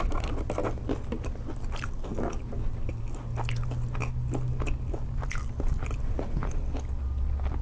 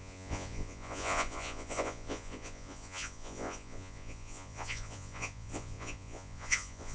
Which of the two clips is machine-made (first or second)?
second